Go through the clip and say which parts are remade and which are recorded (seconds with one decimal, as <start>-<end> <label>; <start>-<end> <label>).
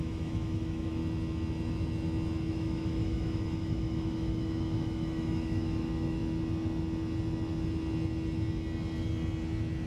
0.0-1.0 remade; 1.0-2.5 recorded; 2.5-6.2 remade; 6.2-9.9 recorded